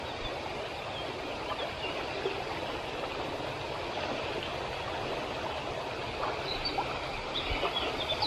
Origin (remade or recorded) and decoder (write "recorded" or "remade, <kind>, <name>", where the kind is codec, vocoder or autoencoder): recorded